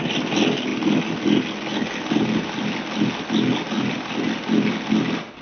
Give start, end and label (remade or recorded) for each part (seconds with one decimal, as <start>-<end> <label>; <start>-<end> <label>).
0.0-5.4 recorded